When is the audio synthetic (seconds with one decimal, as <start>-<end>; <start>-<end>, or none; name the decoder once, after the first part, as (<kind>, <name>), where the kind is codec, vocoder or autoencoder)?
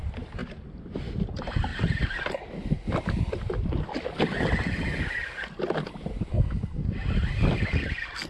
6.3-6.9 (codec, SNAC)